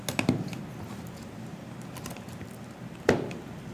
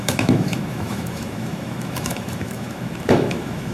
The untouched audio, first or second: first